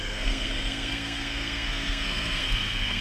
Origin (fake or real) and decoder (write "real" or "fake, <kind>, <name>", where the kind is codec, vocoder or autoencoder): fake, codec, SNAC